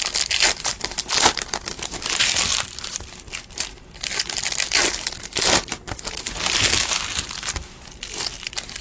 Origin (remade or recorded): recorded